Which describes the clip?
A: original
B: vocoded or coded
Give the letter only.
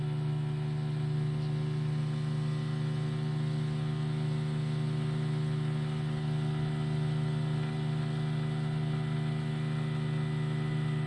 A